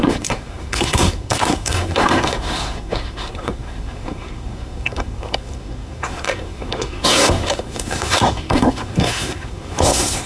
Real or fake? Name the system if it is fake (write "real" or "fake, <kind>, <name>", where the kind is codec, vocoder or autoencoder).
fake, codec, SNAC